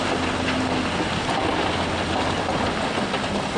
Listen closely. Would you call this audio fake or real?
real